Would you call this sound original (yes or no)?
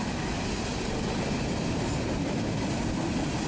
yes